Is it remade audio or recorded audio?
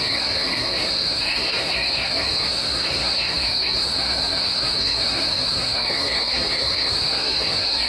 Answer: remade